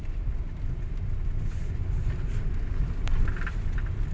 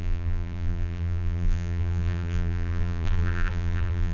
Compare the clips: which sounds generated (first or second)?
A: second